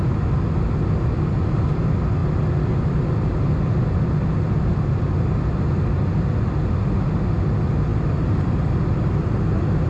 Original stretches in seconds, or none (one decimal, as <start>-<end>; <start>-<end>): 0.0-9.9